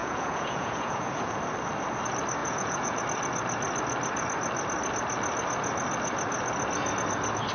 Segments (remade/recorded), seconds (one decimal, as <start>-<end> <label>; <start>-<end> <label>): 0.0-1.4 remade; 1.4-2.4 recorded; 2.4-3.0 remade; 3.0-7.5 recorded